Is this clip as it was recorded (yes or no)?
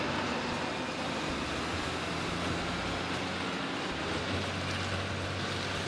yes